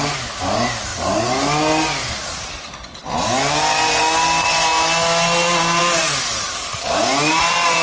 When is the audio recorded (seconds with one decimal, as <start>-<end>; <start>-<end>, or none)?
0.0-7.8